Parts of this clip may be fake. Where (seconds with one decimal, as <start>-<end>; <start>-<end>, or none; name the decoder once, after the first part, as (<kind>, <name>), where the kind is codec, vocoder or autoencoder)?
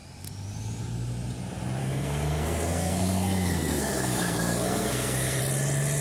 1.8-5.4 (codec, SNAC)